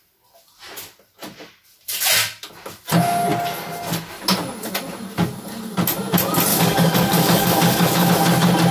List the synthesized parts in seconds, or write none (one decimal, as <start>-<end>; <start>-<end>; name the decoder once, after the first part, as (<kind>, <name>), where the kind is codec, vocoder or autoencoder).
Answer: 6.5-8.1 (codec, DAC)